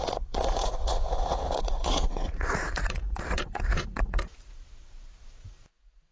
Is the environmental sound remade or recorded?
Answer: remade